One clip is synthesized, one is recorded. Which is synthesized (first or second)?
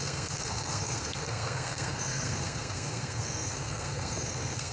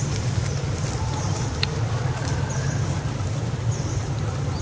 first